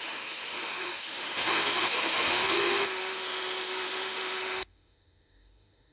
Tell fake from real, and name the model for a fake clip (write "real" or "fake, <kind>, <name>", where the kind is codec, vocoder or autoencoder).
fake, autoencoder, DAC-VAE